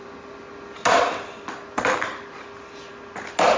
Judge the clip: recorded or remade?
recorded